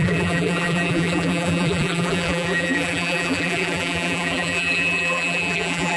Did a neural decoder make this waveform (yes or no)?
yes